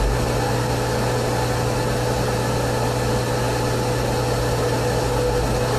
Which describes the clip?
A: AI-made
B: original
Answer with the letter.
B